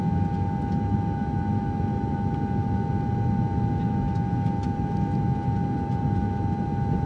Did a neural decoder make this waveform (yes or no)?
no